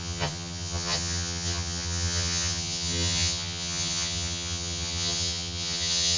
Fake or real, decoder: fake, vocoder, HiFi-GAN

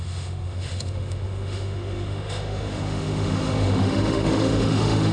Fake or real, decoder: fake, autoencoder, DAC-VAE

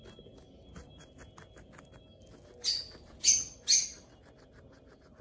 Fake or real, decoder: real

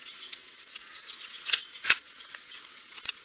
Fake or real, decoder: fake, vocoder, WaveNeXt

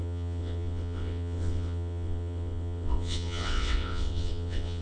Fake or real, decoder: fake, vocoder, WaveNeXt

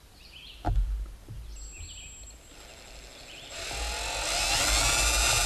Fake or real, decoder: real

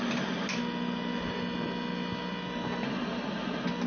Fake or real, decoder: real